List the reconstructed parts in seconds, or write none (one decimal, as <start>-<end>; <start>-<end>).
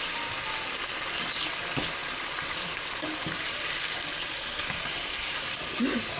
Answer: 2.0-3.7; 4.3-5.6